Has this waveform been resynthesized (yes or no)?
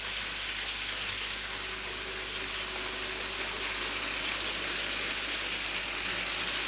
no